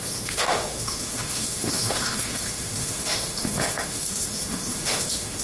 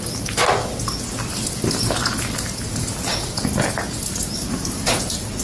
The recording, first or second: second